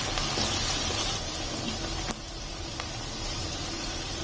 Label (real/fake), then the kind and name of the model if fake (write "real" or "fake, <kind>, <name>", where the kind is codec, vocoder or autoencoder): real